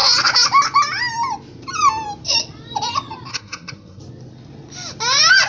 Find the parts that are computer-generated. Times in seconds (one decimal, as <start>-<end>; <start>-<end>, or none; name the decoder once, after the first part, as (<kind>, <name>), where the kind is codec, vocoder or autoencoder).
3.3-4.0 (codec, SNAC)